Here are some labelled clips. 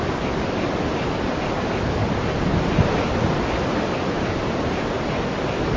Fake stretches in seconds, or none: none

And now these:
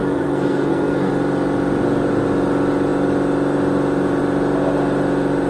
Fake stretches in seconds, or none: 0.0-1.1 (codec, SNAC)

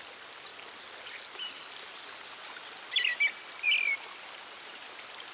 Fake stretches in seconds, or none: none

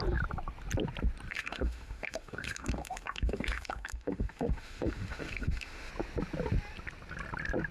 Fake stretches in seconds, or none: 1.3-5.9 (autoencoder, DAC-VAE)